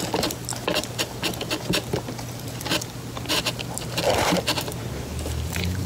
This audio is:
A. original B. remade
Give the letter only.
A